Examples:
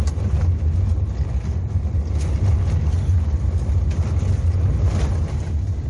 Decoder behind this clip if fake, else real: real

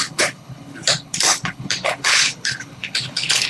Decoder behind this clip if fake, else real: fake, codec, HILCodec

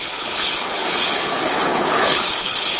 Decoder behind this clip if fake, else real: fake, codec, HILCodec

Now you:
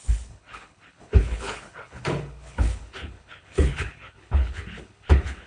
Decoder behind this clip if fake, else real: fake, codec, HILCodec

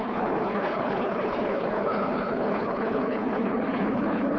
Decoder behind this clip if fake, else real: fake, codec, HILCodec